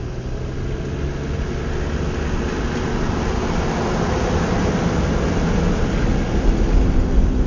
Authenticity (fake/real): real